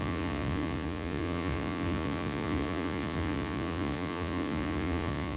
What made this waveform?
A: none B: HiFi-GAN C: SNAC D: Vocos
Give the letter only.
D